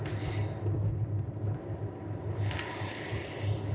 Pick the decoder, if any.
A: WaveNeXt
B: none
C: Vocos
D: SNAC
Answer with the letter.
B